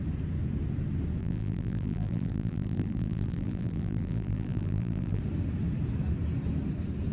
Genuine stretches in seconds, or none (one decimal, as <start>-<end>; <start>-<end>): 0.0-1.2; 5.2-7.1